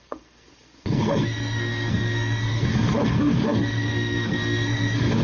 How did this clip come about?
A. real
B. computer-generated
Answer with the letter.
B